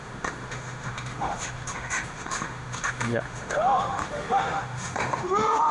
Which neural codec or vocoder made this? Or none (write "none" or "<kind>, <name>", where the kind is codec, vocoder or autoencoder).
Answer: autoencoder, DAC-VAE